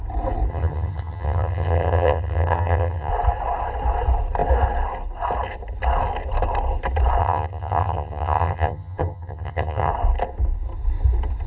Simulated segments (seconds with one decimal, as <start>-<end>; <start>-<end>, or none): 0.5-3.1; 7.2-9.9